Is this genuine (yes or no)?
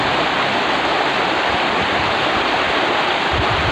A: yes